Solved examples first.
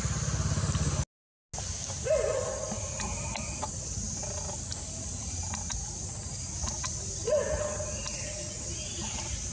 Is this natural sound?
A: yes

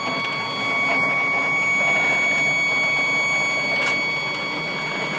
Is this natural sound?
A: yes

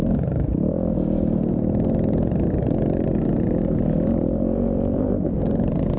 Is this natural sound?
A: no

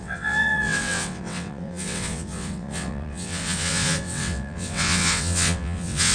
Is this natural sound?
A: no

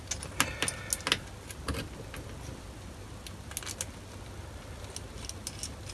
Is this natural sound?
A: yes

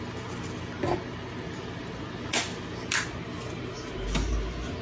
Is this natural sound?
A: yes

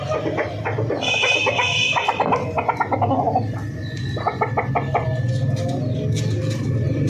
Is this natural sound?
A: yes